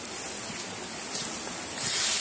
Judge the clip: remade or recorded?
recorded